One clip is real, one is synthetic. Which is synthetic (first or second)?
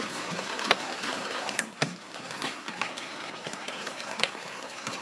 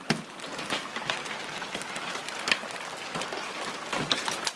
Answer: first